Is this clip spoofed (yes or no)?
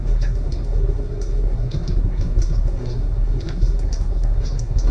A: yes